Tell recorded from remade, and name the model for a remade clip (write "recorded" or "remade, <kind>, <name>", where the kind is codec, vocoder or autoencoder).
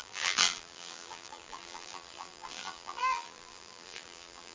remade, vocoder, BigVGAN v2